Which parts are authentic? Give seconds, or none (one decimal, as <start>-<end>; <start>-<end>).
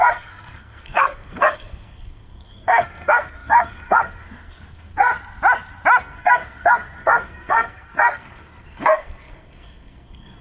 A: 5.1-6.0